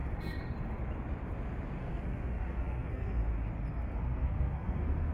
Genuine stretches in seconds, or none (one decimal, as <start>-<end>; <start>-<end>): 0.0-1.8; 3.2-3.8

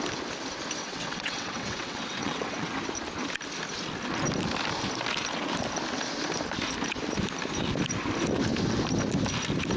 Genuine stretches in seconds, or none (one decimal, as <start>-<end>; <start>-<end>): 0.0-0.8; 2.7-9.8

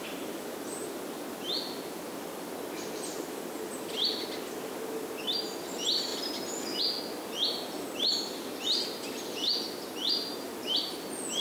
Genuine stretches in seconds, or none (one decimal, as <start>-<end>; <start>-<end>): 0.0-11.4

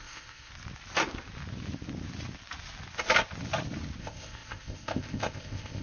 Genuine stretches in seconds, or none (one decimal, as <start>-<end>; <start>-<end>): 0.5-4.0

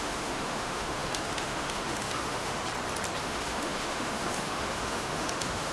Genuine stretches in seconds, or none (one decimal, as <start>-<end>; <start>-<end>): 2.6-3.2

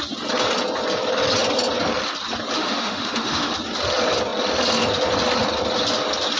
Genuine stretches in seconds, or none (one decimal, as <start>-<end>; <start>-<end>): 0.0-2.6; 3.5-6.4

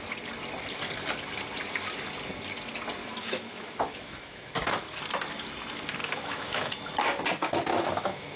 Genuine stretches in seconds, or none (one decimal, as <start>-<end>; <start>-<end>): 0.0-3.0; 4.9-6.0; 6.7-7.4

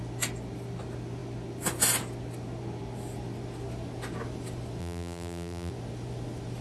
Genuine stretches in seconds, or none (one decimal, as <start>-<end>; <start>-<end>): 0.0-4.8; 5.7-6.6